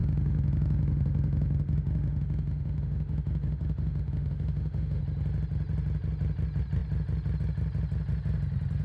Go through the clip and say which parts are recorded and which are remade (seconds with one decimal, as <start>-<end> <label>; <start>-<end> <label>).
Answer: 0.0-5.0 remade; 5.0-8.8 recorded